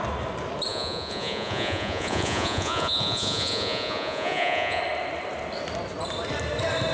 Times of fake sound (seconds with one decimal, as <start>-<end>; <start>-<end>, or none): 0.7-4.8